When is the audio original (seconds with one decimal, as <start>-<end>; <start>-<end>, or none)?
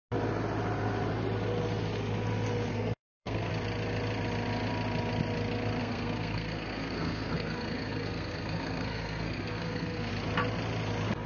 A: 0.0-2.7; 3.5-5.8; 10.1-11.3